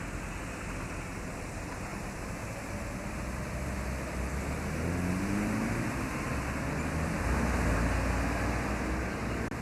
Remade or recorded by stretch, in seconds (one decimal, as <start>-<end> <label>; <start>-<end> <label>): 0.0-1.9 recorded; 1.9-5.9 remade; 5.9-9.6 recorded